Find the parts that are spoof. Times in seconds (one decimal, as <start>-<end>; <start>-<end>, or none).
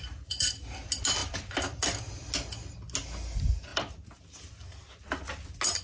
1.2-2.0; 3.7-4.2